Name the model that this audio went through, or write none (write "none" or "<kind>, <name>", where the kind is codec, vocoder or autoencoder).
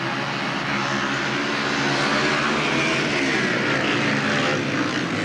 none